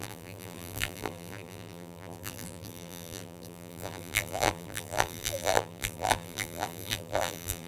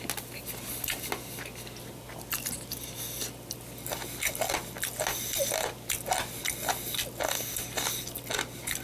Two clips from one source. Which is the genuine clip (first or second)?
second